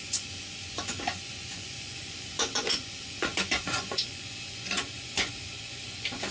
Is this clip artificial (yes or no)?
yes